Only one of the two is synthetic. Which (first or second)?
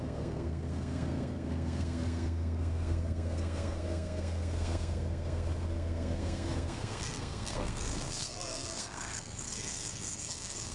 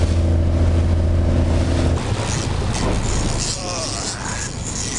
first